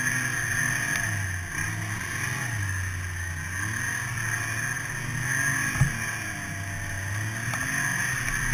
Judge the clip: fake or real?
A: real